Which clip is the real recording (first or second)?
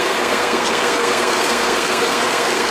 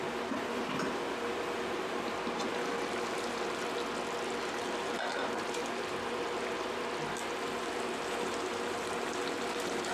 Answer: second